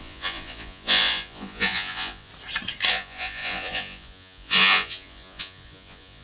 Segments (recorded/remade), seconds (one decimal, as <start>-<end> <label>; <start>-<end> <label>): 0.0-2.3 remade; 2.3-2.9 recorded; 2.9-6.2 remade

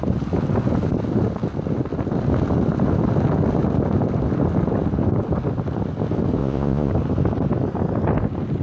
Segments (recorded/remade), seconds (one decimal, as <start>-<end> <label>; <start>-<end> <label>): 0.0-6.4 recorded; 6.4-6.9 remade; 6.9-8.6 recorded

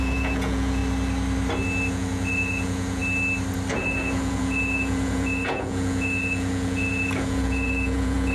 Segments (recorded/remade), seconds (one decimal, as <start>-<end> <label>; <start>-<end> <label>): 0.0-0.8 remade; 0.8-1.9 recorded; 1.9-3.0 remade; 3.0-3.7 recorded; 3.7-8.3 remade

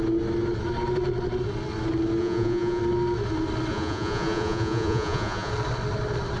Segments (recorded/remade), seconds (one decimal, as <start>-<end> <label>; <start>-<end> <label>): 0.0-2.2 recorded; 2.2-2.8 remade; 2.8-3.7 recorded; 3.7-5.5 remade; 5.5-6.4 recorded

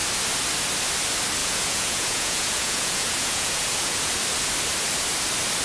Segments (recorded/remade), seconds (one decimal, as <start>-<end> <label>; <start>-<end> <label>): 0.0-1.4 recorded; 1.4-4.1 remade; 4.1-5.6 recorded

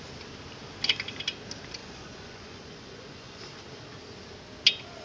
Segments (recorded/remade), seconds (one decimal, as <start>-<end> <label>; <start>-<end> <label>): 0.0-1.8 recorded; 1.8-3.4 remade; 3.4-5.0 recorded

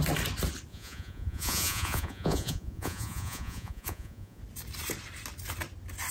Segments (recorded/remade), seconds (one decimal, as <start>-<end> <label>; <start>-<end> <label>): 0.0-0.7 recorded; 0.7-4.4 remade; 4.4-6.1 recorded